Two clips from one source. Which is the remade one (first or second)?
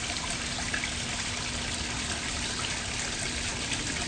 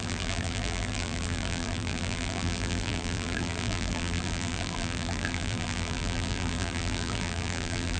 second